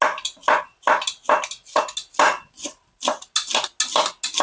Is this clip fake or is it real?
real